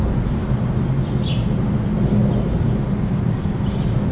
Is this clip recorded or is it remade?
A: recorded